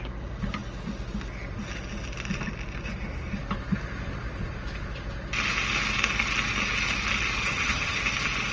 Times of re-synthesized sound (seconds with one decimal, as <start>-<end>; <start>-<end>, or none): 7.4-8.0